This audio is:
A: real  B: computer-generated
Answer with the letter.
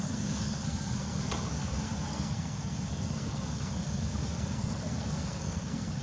B